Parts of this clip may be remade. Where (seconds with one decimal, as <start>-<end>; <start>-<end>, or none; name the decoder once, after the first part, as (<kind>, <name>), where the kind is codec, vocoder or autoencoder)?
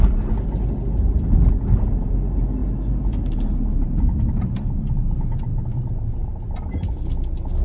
2.6-4.8 (vocoder, BigVGAN v2); 5.5-6.1